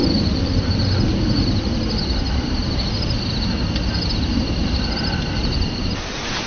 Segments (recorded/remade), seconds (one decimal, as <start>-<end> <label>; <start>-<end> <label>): 0.0-6.5 recorded